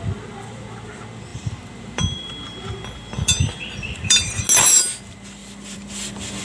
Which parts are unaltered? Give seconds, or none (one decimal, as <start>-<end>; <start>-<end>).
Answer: 0.0-1.3; 4.4-5.4